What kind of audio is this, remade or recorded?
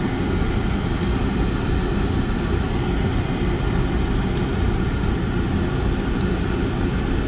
recorded